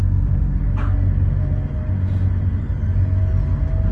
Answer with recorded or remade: recorded